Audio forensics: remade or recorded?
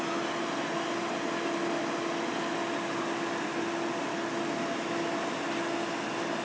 recorded